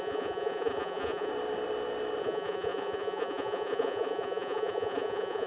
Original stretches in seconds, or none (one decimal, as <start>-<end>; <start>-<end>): 1.3-2.2